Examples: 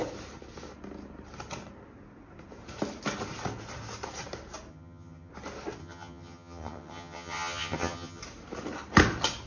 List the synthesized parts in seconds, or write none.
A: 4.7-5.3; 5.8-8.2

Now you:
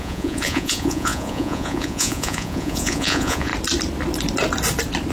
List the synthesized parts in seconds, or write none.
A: 0.0-3.5

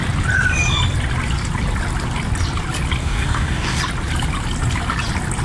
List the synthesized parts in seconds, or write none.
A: 3.0-3.8